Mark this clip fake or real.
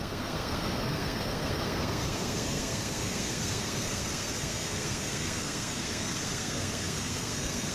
fake